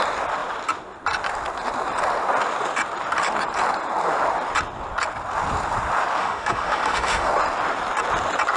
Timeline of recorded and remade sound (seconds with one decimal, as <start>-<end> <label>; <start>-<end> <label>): 0.0-6.2 recorded; 6.2-7.3 remade; 7.3-8.6 recorded